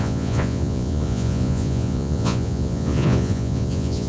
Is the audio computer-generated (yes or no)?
yes